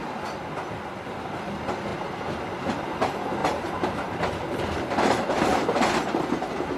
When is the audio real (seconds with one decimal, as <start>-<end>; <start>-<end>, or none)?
0.0-1.9; 2.8-3.4; 6.2-6.8